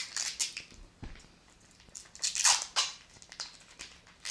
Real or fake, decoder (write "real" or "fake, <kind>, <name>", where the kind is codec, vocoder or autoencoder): real